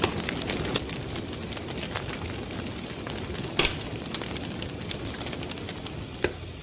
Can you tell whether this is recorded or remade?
recorded